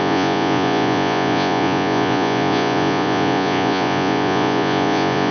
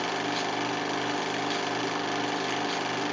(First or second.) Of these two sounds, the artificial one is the first